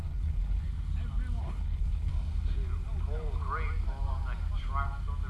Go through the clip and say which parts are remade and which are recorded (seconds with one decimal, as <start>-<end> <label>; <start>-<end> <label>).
0.0-0.6 remade; 0.6-1.4 recorded; 1.4-2.1 remade; 2.1-5.3 recorded